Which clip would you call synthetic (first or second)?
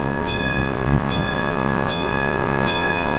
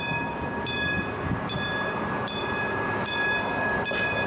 first